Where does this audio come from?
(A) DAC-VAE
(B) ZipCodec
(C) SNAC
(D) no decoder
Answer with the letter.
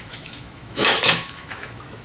A